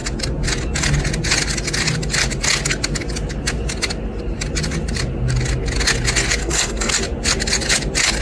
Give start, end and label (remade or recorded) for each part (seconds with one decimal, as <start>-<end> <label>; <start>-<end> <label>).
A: 0.0-6.4 recorded; 6.4-6.9 remade; 6.9-8.2 recorded